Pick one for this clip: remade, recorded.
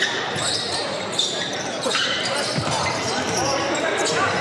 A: remade